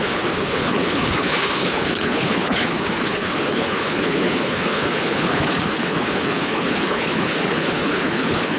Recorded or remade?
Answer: remade